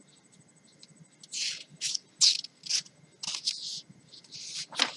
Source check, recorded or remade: recorded